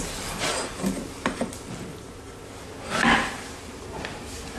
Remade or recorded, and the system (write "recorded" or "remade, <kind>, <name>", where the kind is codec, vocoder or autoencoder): recorded